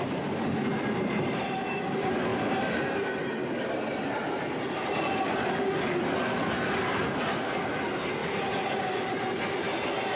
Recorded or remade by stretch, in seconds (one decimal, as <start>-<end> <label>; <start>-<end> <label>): 0.0-10.2 recorded